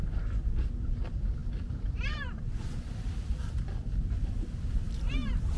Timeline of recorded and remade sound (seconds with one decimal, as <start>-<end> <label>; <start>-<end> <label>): 0.0-0.7 recorded; 0.7-5.6 remade